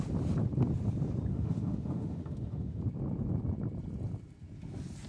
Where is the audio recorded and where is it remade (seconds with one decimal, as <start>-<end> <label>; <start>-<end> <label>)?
0.0-1.3 recorded; 1.3-2.8 remade; 2.8-5.1 recorded